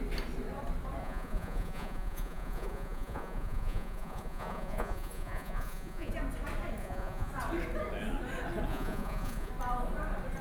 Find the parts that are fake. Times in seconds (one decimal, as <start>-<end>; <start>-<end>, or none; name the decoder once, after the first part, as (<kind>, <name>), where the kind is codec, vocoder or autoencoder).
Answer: 1.0-6.1 (vocoder, Vocos); 6.8-7.3; 8.7-9.5